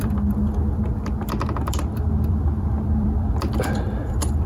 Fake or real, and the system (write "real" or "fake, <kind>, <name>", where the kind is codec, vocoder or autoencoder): fake, vocoder, BigVGAN v2